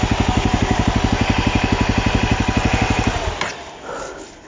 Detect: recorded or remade recorded